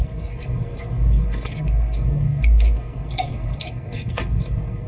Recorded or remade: remade